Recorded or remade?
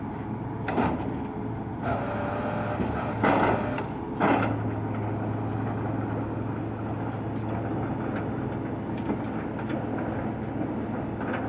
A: recorded